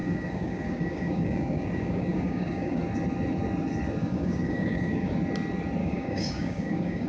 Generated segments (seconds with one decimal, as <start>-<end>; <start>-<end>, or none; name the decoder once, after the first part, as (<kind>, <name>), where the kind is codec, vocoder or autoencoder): 0.0-2.8 (codec, DAC); 4.0-5.1; 5.8-7.1